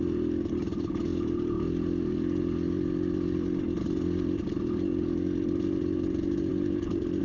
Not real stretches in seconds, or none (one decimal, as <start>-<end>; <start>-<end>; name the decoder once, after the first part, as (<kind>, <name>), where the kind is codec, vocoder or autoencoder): none